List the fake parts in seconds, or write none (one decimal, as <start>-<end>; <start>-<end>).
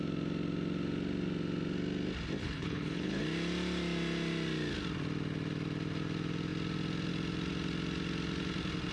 2.4-3.2